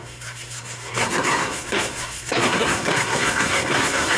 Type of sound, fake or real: fake